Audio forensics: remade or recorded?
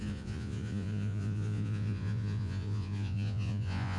remade